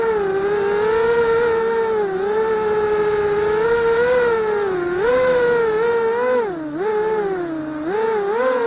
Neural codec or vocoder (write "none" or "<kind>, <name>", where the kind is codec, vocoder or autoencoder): none